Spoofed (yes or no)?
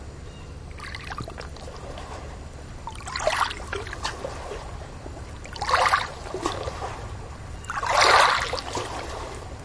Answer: no